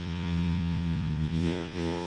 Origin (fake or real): fake